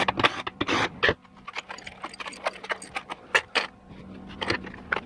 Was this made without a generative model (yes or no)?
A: yes